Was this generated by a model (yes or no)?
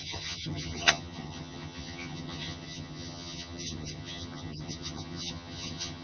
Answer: yes